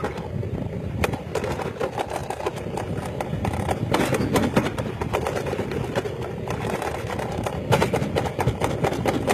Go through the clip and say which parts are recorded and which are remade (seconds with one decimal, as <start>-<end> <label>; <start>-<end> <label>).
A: 0.0-9.3 recorded

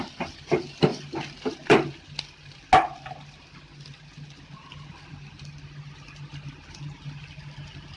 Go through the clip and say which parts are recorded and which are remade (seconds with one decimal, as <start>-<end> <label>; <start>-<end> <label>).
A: 0.0-8.0 recorded

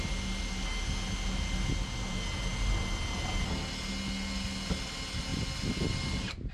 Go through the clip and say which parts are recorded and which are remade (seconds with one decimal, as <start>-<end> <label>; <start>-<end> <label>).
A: 0.0-6.5 recorded

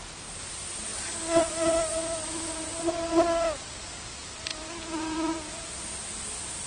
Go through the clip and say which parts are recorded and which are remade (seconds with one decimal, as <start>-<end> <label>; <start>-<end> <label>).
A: 0.0-4.5 recorded; 4.5-5.7 remade; 5.7-6.7 recorded